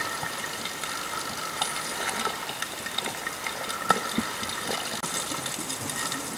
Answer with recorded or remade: recorded